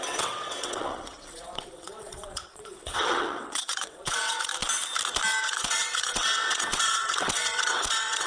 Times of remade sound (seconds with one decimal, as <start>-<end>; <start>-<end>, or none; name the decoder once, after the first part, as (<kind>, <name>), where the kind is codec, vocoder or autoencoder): 0.0-4.5 (vocoder, WaveNeXt); 5.4-8.3